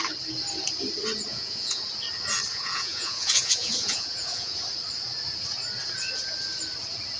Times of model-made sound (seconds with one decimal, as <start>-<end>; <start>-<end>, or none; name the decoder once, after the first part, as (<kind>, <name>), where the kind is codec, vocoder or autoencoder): 1.3-1.8 (vocoder, Vocos); 2.5-4.6